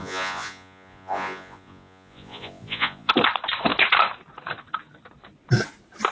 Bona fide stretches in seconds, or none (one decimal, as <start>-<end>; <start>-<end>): 3.1-6.1